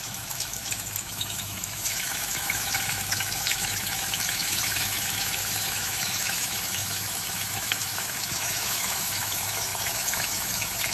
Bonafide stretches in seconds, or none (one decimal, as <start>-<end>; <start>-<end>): none